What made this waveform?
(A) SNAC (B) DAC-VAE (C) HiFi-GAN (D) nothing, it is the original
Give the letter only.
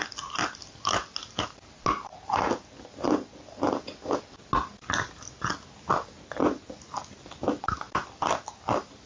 D